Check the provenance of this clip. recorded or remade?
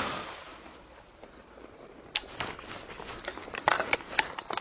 recorded